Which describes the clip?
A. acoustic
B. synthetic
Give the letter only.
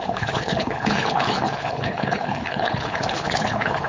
B